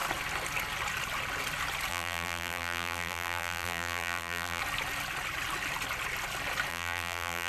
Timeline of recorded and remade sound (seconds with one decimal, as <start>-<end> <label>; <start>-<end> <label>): 0.0-1.9 recorded; 1.9-4.6 remade; 4.6-6.7 recorded; 6.7-7.5 remade